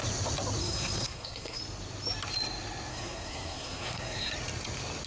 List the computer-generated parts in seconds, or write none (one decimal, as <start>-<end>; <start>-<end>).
0.6-1.6; 2.9-4.3

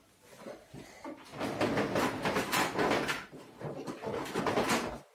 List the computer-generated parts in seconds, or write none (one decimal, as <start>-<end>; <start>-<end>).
none

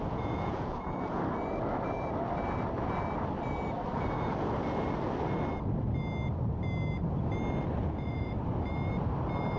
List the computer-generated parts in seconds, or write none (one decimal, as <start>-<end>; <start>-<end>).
0.0-1.2; 7.8-8.4

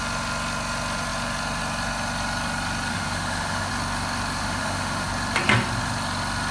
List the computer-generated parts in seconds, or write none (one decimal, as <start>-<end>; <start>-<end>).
2.9-3.7; 4.4-5.1

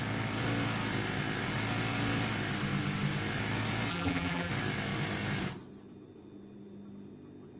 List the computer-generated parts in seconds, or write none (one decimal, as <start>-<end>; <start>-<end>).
3.9-4.5